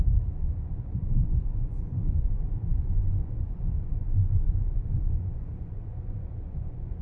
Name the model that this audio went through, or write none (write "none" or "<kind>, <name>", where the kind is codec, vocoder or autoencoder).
vocoder, Vocos